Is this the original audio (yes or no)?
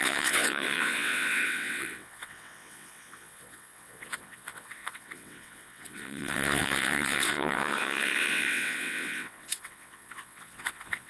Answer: no